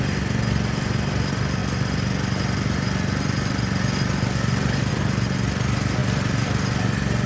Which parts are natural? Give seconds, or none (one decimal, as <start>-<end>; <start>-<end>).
0.0-7.3